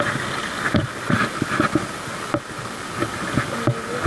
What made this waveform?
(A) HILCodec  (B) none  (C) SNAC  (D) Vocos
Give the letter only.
B